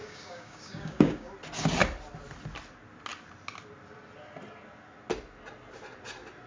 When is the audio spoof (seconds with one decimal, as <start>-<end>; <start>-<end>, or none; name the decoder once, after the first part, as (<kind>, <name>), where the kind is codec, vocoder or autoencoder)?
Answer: 0.0-1.3 (codec, DAC)